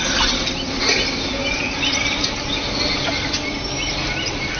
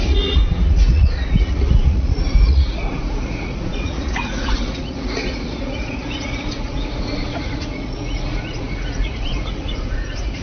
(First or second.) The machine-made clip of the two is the second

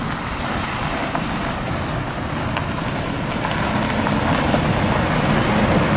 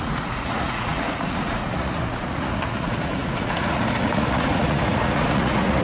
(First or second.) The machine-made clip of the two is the second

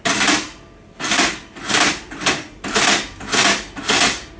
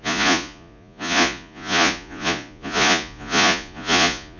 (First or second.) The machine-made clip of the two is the second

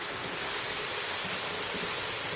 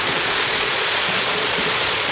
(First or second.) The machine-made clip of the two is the second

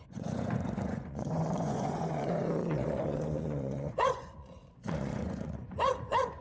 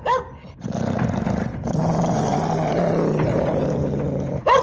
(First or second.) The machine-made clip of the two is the first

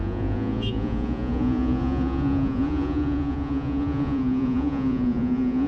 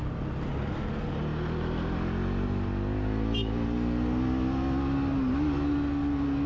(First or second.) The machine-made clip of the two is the first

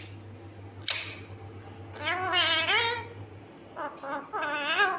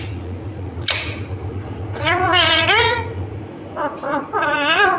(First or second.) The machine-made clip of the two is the second